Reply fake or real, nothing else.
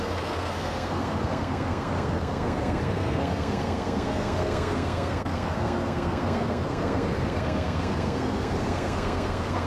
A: fake